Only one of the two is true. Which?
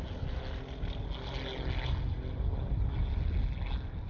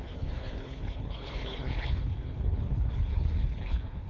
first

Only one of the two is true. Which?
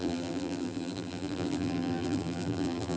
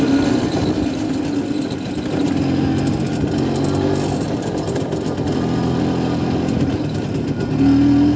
second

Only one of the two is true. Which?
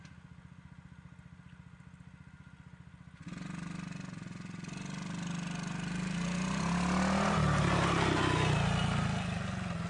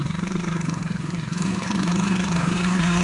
first